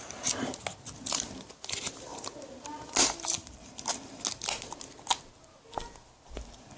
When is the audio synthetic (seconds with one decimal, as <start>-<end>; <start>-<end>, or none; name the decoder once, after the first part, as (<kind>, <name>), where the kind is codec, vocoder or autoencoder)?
3.4-3.9 (vocoder, BigVGAN v2)